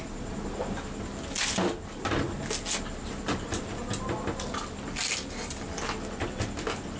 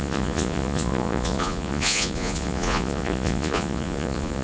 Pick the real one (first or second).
first